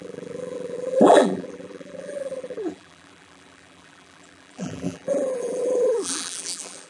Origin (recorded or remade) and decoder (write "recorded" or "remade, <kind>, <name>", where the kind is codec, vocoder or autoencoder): remade, vocoder, BigVGAN v2